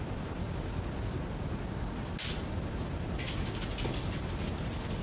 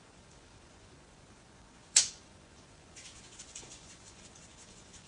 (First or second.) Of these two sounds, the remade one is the second